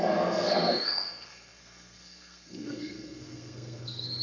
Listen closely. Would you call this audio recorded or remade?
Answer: remade